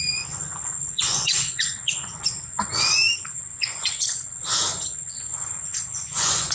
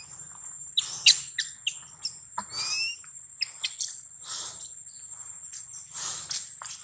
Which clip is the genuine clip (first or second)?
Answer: second